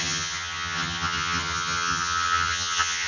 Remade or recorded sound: remade